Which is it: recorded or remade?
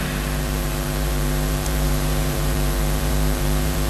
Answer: remade